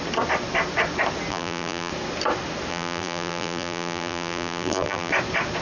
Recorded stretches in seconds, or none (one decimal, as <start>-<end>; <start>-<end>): 0.0-1.3; 1.9-2.7; 5.1-5.6

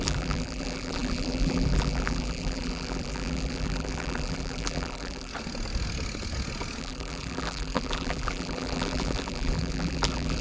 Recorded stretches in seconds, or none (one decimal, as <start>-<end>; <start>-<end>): 5.3-6.8

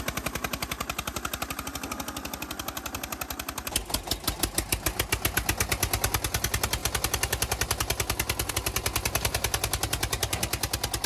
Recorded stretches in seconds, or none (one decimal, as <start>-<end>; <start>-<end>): 0.0-11.1

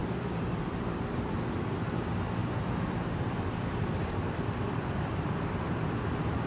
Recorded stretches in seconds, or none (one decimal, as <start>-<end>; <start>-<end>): 1.4-2.4; 5.6-6.5